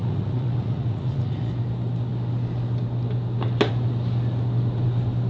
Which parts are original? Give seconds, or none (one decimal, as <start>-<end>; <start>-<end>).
1.5-5.3